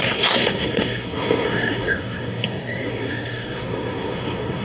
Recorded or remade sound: remade